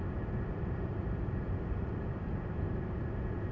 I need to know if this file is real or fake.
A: real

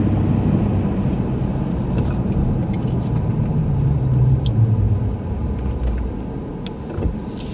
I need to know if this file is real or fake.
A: real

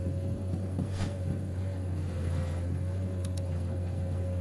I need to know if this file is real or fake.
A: fake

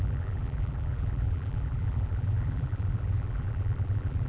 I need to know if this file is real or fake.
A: fake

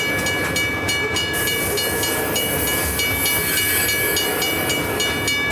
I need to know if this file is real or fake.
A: real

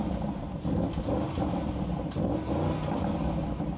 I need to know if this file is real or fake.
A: real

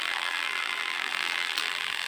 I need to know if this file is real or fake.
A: fake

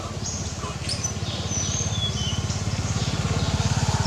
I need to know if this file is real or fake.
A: real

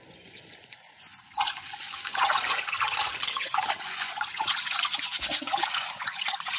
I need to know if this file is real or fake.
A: fake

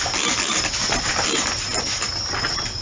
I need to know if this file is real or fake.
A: real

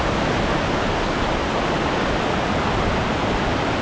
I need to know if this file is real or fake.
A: real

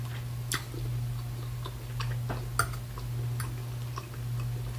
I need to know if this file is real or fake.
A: real